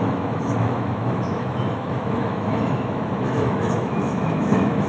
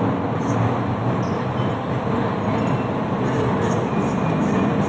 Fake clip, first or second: first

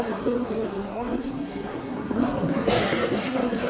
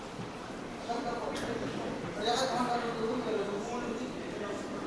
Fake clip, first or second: first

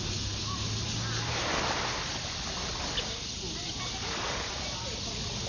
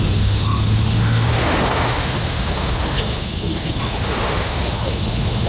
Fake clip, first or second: second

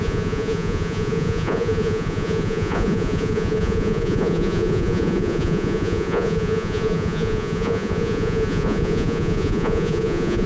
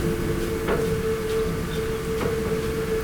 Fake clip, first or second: first